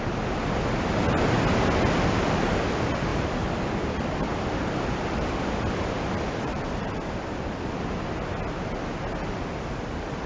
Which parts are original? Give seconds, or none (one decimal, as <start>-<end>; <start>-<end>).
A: 0.0-3.1; 7.7-10.3